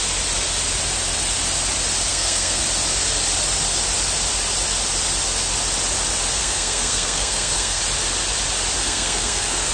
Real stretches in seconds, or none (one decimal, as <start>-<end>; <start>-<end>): 0.0-2.1; 2.6-6.4; 7.8-8.8